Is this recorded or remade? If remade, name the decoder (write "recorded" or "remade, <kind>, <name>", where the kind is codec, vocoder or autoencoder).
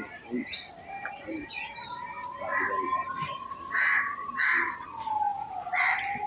remade, vocoder, BigVGAN v2